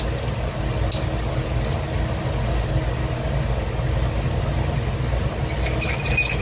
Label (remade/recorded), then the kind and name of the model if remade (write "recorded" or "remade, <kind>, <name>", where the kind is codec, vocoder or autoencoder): recorded